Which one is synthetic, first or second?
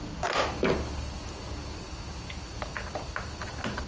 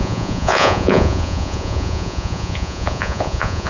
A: second